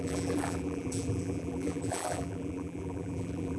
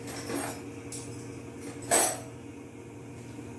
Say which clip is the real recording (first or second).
second